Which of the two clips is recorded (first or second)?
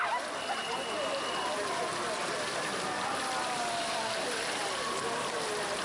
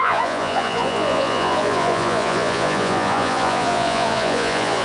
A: first